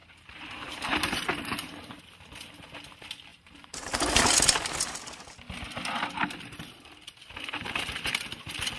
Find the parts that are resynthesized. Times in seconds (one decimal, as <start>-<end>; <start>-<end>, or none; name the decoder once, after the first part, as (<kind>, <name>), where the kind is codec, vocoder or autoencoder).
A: 0.0-2.0 (vocoder, BigVGAN v2); 3.3-3.9